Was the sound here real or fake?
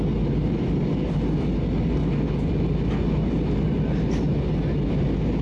real